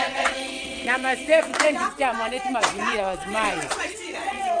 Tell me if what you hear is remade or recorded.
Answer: remade